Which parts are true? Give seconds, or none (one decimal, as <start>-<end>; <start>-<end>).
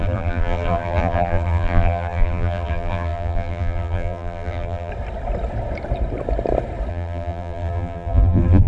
4.9-6.9